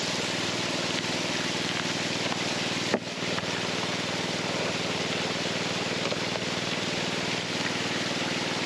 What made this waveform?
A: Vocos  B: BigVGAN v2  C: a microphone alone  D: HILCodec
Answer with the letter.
C